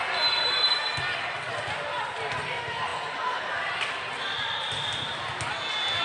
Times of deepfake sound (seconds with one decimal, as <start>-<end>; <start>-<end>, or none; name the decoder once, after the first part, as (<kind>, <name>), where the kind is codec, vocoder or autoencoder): none

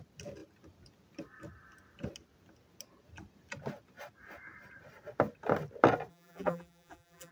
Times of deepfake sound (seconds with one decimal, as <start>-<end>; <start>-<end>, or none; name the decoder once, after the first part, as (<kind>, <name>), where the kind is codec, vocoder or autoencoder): 6.1-7.3 (vocoder, BigVGAN v2)

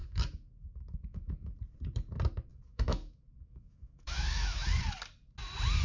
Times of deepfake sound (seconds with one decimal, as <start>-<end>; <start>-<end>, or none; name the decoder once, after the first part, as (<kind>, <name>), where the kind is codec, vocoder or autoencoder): 0.0-1.5 (autoencoder, DAC-VAE); 2.5-4.8

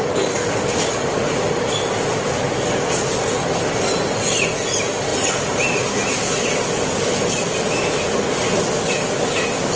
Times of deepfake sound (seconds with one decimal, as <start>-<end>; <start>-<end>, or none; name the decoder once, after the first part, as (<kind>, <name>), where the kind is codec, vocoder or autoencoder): none

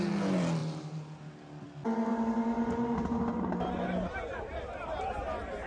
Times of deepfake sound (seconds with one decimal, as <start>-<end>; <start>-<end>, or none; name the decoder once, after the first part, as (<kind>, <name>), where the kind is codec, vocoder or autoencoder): 0.6-1.2 (vocoder, BigVGAN v2); 2.1-5.7